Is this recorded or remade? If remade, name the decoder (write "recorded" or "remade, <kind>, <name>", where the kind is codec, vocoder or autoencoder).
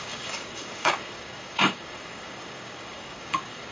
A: remade, codec, DAC